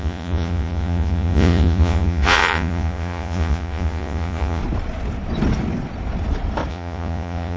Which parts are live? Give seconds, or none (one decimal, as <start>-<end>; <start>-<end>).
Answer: 4.6-6.7